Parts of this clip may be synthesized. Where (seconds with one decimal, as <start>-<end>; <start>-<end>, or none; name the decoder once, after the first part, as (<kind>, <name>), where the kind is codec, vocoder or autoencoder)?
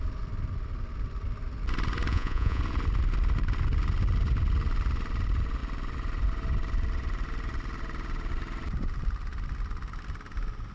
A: 2.1-2.6 (vocoder, Vocos)